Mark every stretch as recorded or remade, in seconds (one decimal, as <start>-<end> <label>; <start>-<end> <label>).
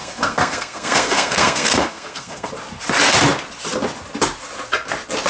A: 0.0-2.5 remade; 2.5-5.3 recorded